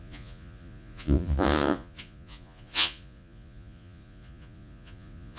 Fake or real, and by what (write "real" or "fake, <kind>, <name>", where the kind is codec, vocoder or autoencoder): fake, vocoder, Vocos